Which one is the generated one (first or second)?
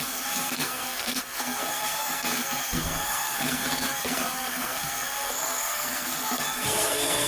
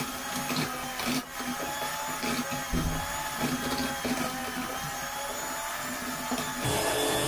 first